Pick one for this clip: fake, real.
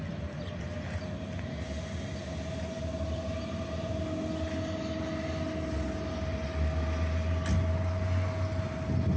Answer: real